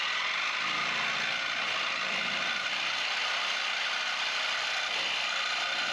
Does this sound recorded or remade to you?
recorded